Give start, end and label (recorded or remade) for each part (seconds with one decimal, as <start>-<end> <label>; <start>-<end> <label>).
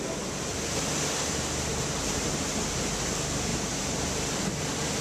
0.0-1.7 recorded; 1.7-2.5 remade; 2.5-3.5 recorded; 3.5-4.6 remade; 4.6-5.0 recorded